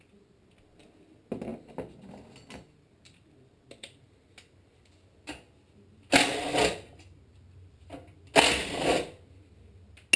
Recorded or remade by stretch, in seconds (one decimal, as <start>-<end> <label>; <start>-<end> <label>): 0.0-10.2 recorded